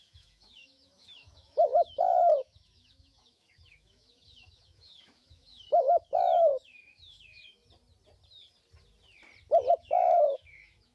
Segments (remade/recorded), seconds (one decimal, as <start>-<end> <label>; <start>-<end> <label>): 0.0-7.6 remade; 7.6-9.7 recorded; 9.7-10.9 remade